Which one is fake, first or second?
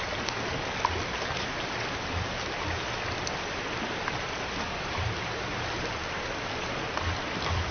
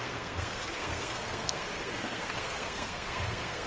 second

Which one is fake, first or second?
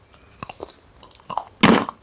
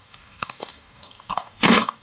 second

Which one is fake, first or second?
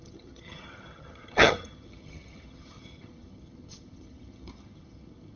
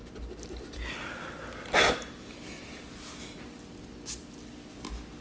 first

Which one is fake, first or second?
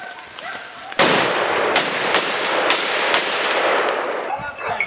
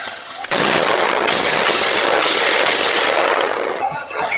second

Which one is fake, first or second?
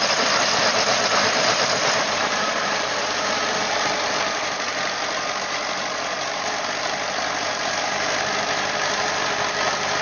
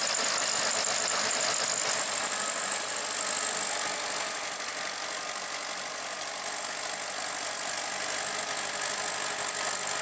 first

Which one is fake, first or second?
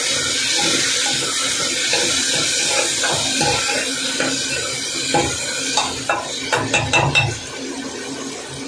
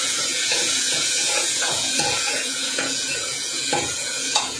second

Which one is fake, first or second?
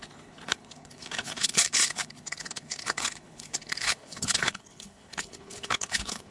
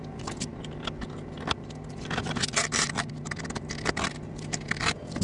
first